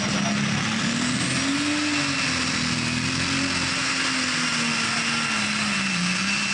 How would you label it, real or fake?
real